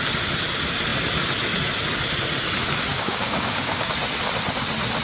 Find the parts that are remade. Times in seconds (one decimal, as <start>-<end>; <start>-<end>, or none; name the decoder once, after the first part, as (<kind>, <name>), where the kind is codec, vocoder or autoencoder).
2.9-3.9 (codec, DAC)